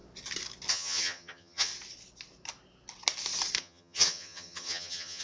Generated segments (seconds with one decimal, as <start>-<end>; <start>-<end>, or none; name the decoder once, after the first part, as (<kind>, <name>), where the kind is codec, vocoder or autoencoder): 0.7-1.7 (vocoder, HiFi-GAN); 3.6-5.2